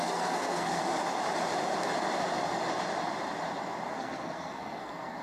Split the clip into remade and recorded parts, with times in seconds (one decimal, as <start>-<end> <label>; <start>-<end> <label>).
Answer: 0.0-0.8 remade; 0.8-3.9 recorded; 3.9-5.2 remade